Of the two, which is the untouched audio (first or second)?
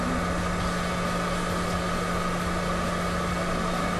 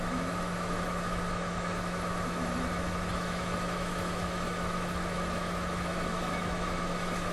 first